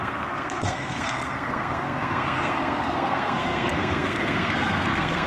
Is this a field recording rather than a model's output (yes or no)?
no